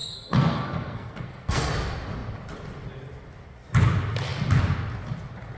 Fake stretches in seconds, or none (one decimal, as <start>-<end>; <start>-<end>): 0.0-1.7